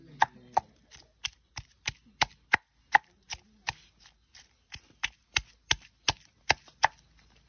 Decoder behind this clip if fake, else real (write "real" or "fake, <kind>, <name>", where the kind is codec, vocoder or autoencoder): real